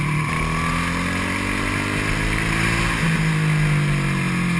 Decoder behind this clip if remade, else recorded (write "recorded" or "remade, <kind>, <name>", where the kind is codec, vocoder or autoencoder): recorded